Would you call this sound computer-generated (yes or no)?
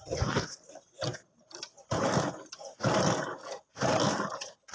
no